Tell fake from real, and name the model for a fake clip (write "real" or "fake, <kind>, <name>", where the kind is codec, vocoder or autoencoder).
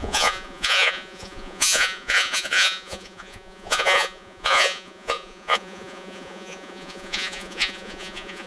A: fake, vocoder, Vocos